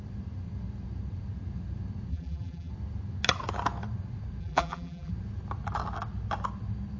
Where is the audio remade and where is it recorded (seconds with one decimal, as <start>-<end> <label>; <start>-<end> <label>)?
0.0-2.1 recorded; 2.1-2.7 remade; 2.7-4.4 recorded; 4.4-5.1 remade; 5.1-7.0 recorded

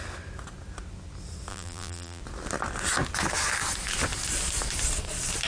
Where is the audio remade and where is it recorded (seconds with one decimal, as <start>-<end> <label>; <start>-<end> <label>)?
0.0-1.5 recorded; 1.5-2.2 remade; 2.2-5.5 recorded

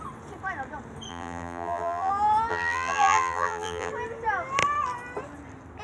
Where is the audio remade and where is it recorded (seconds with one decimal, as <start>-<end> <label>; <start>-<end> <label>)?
0.0-1.1 recorded; 1.1-2.1 remade; 2.1-2.5 recorded; 2.5-3.9 remade; 3.9-5.8 recorded

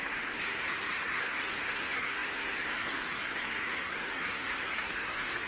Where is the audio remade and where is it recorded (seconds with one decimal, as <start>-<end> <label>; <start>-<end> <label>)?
0.0-5.5 remade

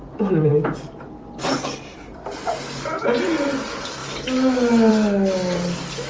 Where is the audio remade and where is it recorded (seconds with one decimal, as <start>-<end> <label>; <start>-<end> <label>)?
0.0-6.1 recorded

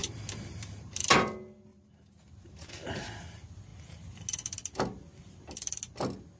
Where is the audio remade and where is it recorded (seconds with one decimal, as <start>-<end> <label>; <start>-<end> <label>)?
0.0-1.1 remade; 1.1-1.7 recorded; 1.7-3.2 remade; 3.2-6.4 recorded

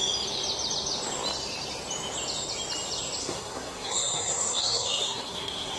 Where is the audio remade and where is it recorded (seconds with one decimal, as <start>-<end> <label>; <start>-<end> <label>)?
0.0-3.2 recorded; 3.2-5.8 remade

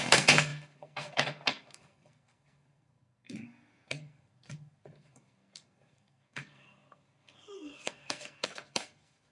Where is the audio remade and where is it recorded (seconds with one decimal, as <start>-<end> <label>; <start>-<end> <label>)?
0.0-9.3 remade